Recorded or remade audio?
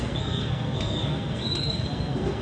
remade